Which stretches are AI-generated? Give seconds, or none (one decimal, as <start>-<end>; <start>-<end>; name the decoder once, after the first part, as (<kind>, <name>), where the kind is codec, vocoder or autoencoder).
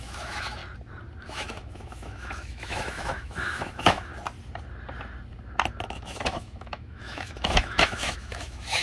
0.0-0.6 (autoencoder, DAC-VAE); 1.2-4.1; 5.9-8.8